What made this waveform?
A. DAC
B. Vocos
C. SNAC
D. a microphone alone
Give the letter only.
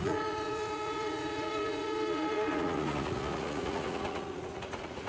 B